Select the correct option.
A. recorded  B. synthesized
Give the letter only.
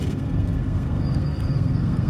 B